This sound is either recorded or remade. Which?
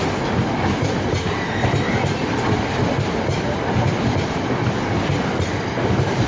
recorded